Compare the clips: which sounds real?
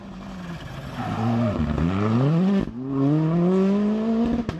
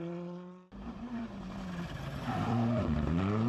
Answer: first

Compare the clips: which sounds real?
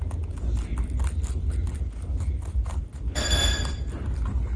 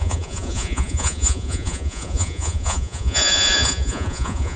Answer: first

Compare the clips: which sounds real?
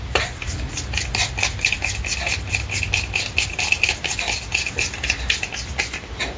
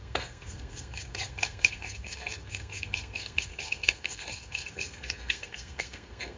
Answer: first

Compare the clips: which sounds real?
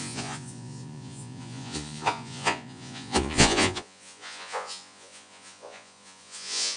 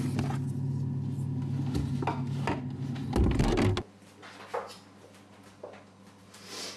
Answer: second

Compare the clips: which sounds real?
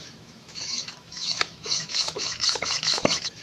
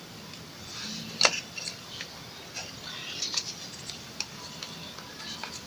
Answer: second